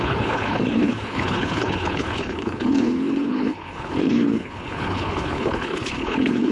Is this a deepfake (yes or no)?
yes